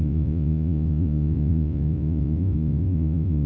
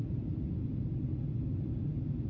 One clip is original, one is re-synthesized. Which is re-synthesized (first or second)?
first